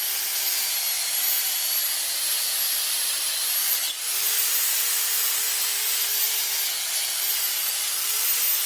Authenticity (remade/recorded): recorded